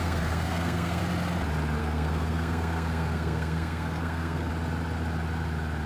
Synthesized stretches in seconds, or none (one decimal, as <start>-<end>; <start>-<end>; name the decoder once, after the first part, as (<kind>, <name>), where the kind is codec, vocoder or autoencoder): 0.0-1.0 (codec, SNAC); 1.8-4.5